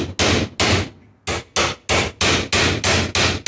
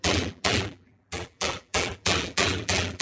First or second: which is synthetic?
second